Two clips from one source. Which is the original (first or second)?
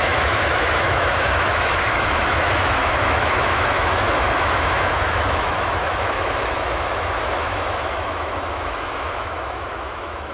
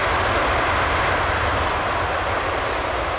second